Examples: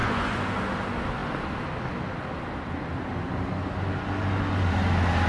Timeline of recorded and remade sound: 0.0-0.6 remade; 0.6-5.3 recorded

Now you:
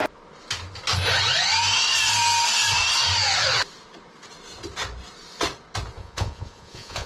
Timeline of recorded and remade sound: 0.0-6.0 recorded; 6.0-7.1 remade

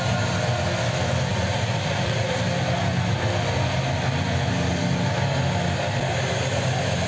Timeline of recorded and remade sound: 0.0-1.3 recorded; 1.3-2.4 remade; 2.4-7.1 recorded